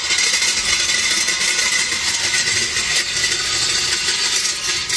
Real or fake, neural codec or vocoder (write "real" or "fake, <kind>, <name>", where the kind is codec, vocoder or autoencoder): real